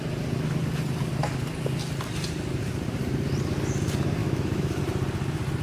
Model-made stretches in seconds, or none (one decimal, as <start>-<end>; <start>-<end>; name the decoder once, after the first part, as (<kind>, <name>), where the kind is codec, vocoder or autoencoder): 4.2-4.8 (autoencoder, DAC-VAE)